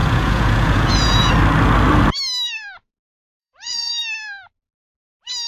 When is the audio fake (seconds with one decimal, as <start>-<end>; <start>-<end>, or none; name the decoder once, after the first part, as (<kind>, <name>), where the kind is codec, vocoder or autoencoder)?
0.0-1.3 (vocoder, Vocos); 3.4-3.9